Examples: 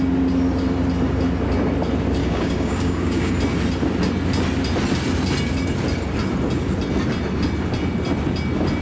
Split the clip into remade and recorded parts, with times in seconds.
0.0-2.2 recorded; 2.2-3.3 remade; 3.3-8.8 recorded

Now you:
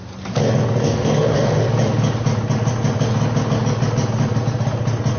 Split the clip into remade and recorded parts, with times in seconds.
0.0-0.8 recorded; 0.8-1.6 remade; 1.6-5.2 recorded